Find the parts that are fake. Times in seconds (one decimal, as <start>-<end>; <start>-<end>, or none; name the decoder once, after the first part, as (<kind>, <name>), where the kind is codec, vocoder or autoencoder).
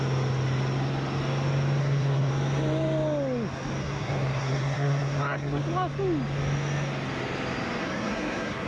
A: 1.8-2.3 (codec, SNAC); 3.8-5.6; 7.8-8.7